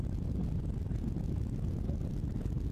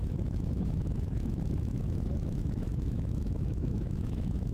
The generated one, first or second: second